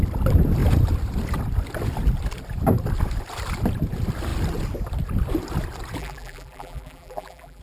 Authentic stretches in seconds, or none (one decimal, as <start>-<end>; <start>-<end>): 0.0-6.0